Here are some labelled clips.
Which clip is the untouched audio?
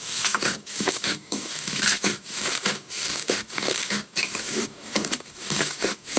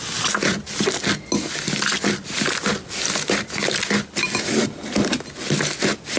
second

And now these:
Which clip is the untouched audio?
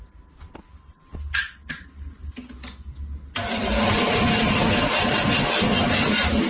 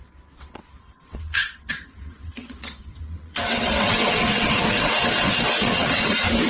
first